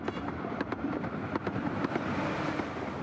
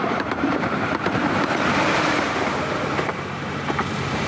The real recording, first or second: first